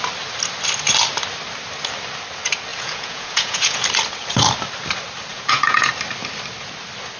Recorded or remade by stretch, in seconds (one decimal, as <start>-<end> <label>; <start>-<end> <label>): 0.0-2.7 recorded; 2.7-3.8 remade; 3.8-5.3 recorded; 5.3-5.9 remade; 5.9-7.2 recorded